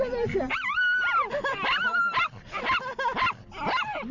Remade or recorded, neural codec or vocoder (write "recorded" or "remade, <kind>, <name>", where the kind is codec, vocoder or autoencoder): recorded